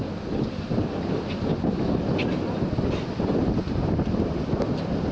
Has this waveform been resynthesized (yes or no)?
no